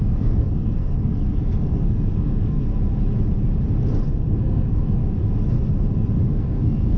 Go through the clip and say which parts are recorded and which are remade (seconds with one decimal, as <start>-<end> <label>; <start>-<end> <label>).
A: 0.0-2.7 remade; 2.7-4.3 recorded; 4.3-5.0 remade; 5.0-6.3 recorded; 6.3-7.0 remade